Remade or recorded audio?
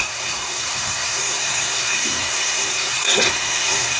remade